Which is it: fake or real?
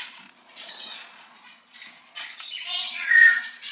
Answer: fake